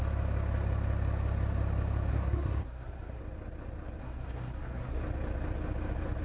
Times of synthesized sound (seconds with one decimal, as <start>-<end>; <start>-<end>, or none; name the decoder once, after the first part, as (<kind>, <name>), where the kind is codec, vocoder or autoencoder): 2.1-3.2 (codec, SNAC); 4.0-5.0